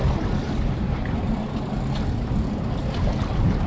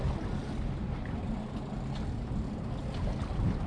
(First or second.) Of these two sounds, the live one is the second